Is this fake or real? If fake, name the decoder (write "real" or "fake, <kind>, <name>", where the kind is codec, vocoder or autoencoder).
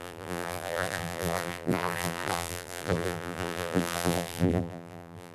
fake, vocoder, BigVGAN v2